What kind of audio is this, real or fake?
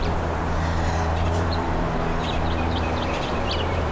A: fake